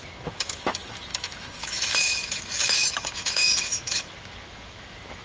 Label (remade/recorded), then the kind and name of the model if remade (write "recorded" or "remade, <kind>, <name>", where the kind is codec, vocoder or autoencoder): remade, autoencoder, DAC-VAE